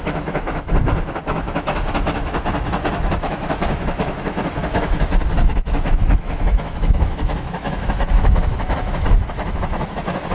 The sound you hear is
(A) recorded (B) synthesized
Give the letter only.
B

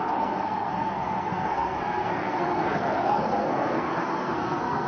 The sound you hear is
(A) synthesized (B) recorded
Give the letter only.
A